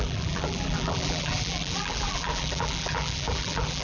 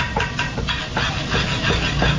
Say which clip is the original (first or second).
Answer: second